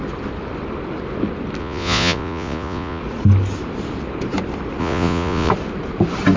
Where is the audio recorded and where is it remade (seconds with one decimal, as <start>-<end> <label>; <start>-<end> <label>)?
0.0-1.6 recorded; 1.6-3.0 remade; 3.0-4.8 recorded; 4.8-5.5 remade; 5.5-6.4 recorded